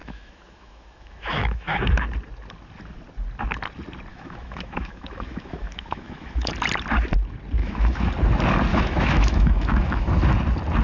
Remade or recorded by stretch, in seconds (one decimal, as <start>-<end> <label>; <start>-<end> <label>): 0.0-1.8 remade; 1.8-4.1 recorded; 4.1-6.5 remade; 6.5-7.6 recorded; 7.6-8.1 remade; 8.1-8.7 recorded; 8.7-10.1 remade; 10.1-10.8 recorded